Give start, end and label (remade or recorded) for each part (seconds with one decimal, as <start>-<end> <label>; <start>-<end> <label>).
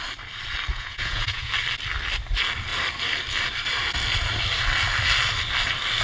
0.0-0.7 recorded; 0.7-1.5 remade; 1.5-6.0 recorded